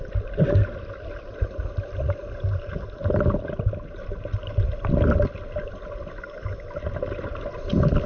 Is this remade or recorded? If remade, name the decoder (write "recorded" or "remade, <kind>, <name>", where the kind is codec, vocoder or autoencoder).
recorded